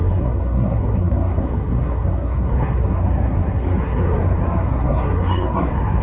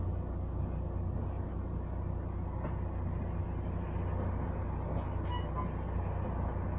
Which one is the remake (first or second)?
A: first